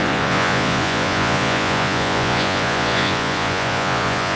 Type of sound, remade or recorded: remade